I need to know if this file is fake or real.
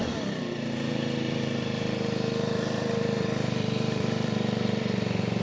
fake